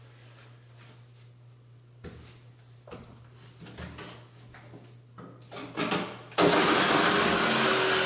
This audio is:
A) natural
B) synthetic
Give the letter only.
A